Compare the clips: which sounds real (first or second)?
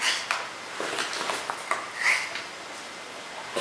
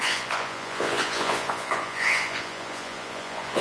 first